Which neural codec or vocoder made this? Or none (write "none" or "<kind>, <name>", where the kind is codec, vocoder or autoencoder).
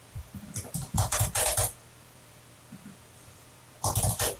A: vocoder, BigVGAN v2